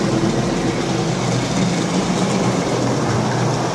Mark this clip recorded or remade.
recorded